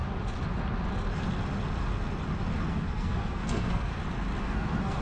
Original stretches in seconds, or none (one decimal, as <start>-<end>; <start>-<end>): 0.0-2.7; 3.9-4.4

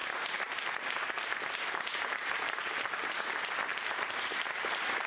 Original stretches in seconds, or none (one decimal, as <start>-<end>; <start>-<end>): 3.1-3.7

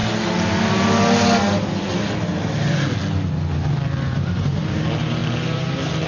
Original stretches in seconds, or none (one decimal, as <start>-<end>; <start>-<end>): 0.0-3.7

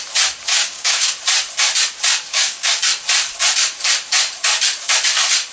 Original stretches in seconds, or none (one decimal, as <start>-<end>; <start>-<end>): 0.0-0.5; 1.1-2.3; 2.8-5.5

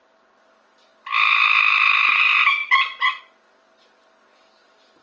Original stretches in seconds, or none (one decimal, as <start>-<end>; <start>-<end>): none